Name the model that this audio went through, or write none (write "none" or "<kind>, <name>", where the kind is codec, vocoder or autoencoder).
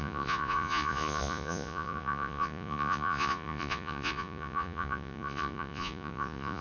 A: vocoder, Vocos